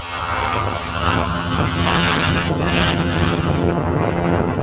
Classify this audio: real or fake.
fake